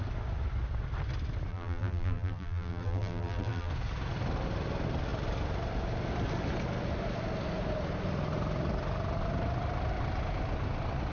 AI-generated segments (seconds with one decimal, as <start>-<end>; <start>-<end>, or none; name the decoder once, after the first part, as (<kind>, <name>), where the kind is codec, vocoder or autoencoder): 1.5-3.7 (vocoder, BigVGAN v2)